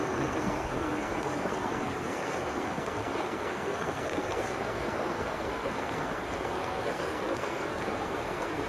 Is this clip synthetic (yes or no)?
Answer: yes